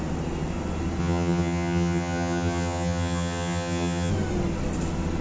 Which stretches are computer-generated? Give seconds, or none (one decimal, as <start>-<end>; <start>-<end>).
1.0-4.1